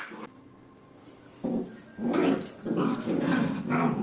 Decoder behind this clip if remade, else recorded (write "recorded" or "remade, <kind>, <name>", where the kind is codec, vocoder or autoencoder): recorded